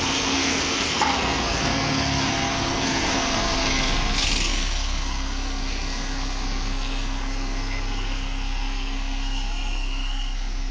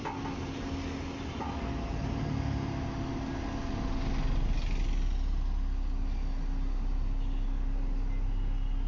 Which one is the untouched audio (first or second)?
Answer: second